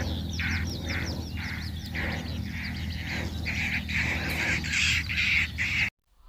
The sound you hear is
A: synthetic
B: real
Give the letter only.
B